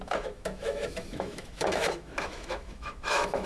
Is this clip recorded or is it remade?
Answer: remade